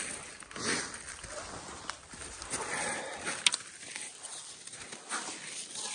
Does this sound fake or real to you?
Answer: real